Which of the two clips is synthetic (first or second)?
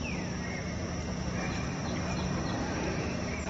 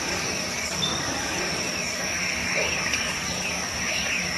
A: second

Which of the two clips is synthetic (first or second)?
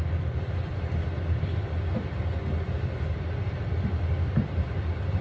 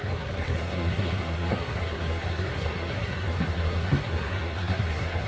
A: second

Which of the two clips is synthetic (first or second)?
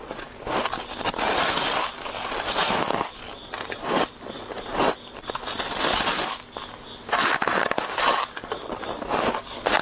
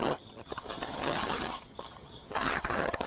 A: second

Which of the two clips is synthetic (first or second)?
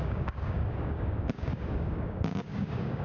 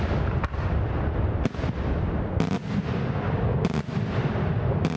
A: first